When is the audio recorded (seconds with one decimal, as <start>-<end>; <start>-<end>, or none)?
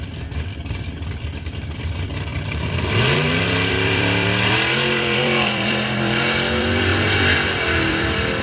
6.9-7.9